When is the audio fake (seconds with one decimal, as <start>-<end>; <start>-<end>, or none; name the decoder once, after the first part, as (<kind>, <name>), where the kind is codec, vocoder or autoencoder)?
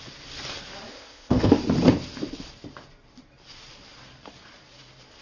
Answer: 0.9-1.5 (codec, ZipCodec)